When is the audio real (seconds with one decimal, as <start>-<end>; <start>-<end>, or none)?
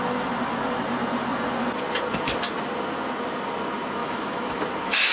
0.0-4.0; 4.6-5.1